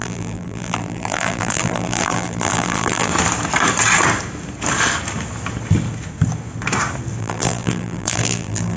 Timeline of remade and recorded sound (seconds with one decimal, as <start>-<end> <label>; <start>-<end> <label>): 0.0-3.1 remade; 3.1-7.2 recorded; 7.2-8.8 remade